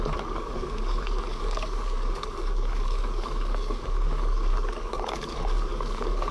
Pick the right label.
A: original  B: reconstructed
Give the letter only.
B